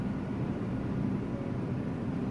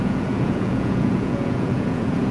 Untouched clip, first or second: first